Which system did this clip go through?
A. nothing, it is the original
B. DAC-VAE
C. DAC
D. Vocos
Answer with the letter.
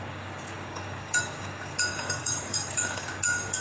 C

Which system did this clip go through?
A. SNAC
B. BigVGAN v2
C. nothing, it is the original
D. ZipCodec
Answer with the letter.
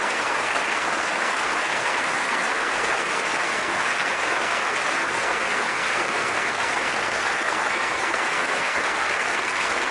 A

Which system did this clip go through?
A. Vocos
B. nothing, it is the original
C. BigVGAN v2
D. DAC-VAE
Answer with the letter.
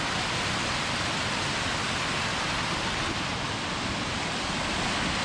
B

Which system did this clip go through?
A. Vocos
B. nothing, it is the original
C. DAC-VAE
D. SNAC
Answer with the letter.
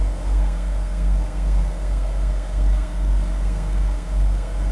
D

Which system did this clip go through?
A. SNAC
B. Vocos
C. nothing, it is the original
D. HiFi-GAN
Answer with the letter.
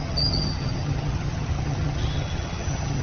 D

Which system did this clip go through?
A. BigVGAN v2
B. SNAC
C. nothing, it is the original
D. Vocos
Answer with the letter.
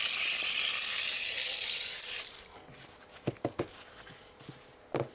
C